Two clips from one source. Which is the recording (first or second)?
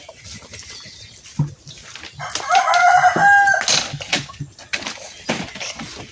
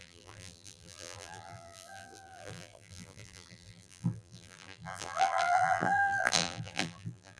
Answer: first